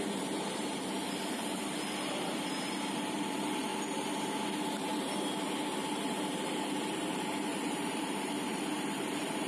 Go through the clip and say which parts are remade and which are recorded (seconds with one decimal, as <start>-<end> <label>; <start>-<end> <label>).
0.0-3.7 remade; 3.7-6.3 recorded; 6.3-9.5 remade